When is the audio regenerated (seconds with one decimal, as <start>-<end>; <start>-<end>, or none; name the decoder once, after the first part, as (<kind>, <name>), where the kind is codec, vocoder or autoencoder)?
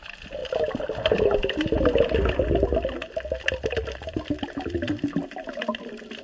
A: none